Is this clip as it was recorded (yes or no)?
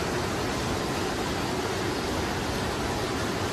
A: yes